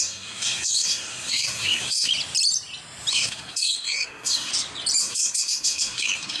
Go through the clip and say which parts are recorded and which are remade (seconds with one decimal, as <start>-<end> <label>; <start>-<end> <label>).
0.0-2.1 remade; 2.1-3.1 recorded; 3.1-4.5 remade; 4.5-5.0 recorded; 5.0-6.4 remade

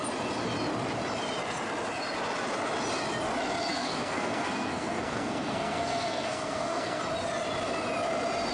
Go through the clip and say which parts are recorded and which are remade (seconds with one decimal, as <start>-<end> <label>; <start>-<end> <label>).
0.0-3.7 recorded; 3.7-7.0 remade; 7.0-8.5 recorded

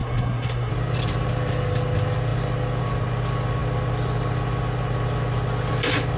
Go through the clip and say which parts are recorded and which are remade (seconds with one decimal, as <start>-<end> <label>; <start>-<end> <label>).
0.0-0.7 remade; 0.7-6.2 recorded

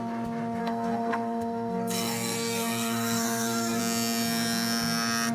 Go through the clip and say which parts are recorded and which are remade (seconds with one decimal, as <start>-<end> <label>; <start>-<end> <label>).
0.0-0.6 recorded; 0.6-3.8 remade; 3.8-5.3 recorded